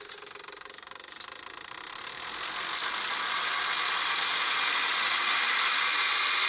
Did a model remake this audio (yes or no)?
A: no